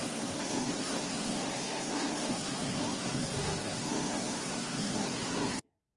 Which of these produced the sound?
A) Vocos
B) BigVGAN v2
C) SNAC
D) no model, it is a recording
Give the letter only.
C